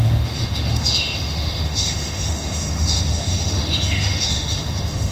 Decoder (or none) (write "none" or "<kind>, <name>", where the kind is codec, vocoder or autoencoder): autoencoder, DAC-VAE